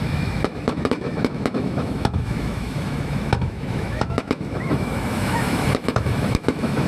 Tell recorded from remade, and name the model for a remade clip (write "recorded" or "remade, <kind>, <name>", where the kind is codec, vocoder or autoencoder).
remade, autoencoder, DAC-VAE